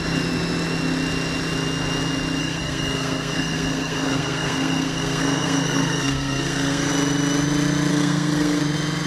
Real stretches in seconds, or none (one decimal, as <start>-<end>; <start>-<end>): 0.0-2.4; 6.9-7.9; 8.6-9.1